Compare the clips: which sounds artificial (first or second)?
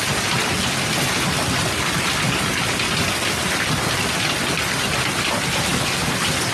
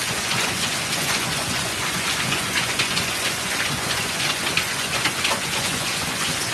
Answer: second